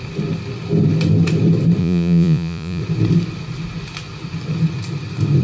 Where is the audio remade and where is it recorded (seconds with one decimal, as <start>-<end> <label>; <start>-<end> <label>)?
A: 0.0-1.8 recorded; 1.8-2.8 remade; 2.8-5.4 recorded